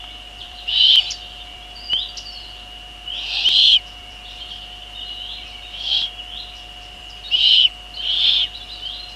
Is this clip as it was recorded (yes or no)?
no